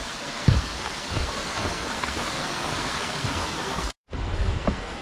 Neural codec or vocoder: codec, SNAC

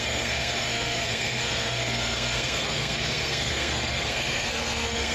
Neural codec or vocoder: codec, SNAC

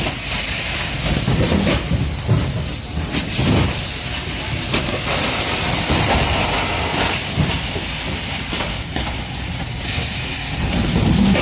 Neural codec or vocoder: none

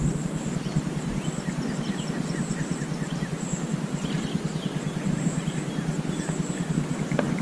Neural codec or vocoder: none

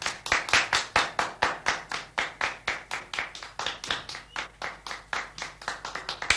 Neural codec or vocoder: none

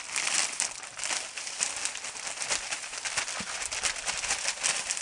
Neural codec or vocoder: none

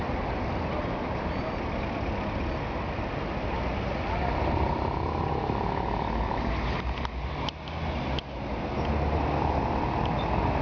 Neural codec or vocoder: none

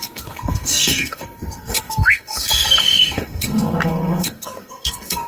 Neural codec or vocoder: codec, SNAC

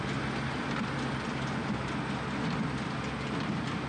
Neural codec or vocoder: none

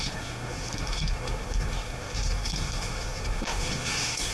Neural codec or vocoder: codec, SNAC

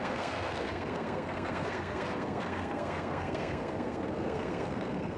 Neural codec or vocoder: codec, SNAC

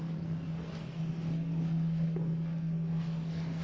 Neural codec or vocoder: codec, SNAC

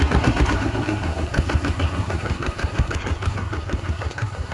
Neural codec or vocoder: codec, SNAC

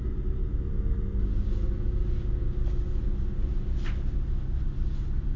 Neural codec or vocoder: none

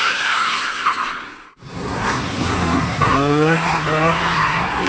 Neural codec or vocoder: codec, SNAC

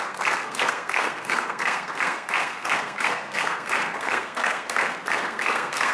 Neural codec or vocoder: codec, SNAC